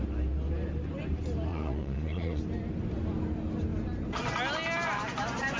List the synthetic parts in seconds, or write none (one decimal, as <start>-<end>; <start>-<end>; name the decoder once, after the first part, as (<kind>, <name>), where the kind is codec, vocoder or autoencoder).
1.5-2.4 (vocoder, Vocos)